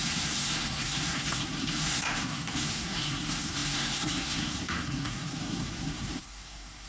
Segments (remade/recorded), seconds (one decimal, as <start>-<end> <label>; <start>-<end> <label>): 0.0-6.9 remade